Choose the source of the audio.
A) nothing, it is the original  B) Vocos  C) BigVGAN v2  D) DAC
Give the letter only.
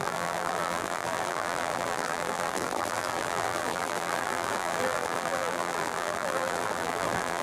C